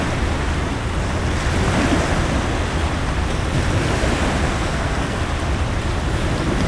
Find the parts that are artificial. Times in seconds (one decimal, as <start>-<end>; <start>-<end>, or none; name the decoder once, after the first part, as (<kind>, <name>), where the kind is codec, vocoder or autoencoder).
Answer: 4.4-5.2 (codec, SNAC)